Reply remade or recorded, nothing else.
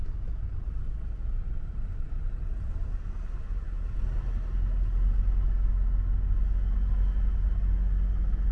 recorded